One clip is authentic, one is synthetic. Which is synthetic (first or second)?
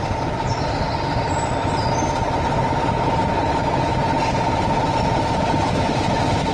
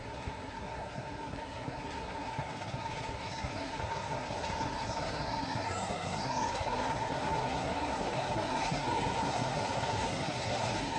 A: second